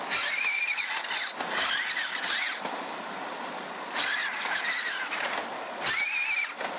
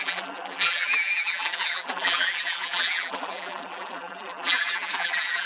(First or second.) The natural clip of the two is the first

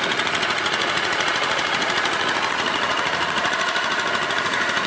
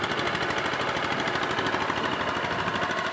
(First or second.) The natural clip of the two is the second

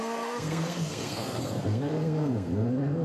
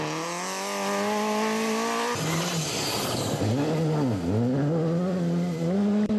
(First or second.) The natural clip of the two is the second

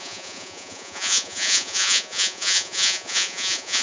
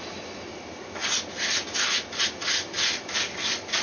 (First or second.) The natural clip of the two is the second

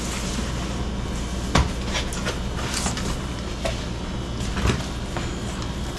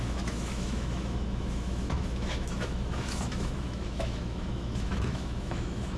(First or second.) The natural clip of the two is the first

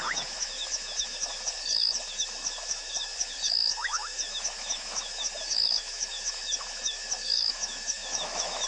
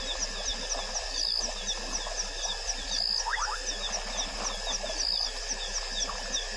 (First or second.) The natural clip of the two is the second